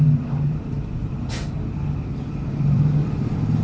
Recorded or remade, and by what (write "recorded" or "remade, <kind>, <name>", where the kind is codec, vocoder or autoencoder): remade, vocoder, BigVGAN v2